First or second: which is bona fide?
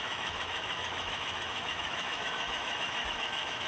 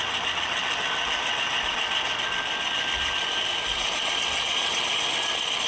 second